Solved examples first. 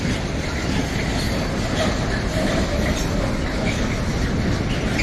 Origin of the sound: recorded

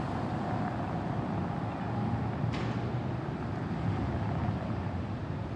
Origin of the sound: recorded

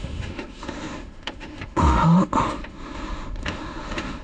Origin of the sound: remade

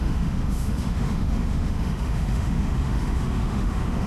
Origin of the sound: remade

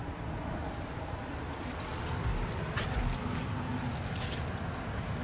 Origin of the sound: recorded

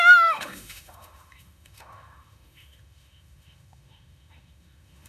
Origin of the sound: remade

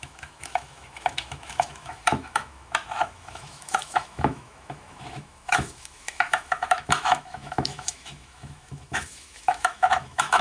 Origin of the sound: remade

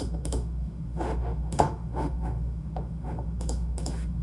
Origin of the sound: remade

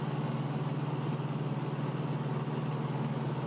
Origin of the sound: recorded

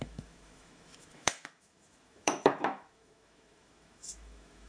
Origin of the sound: remade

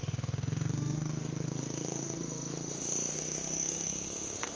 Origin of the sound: remade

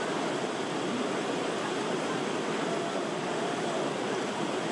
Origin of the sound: recorded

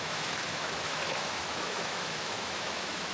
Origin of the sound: remade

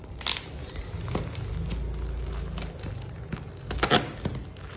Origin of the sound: recorded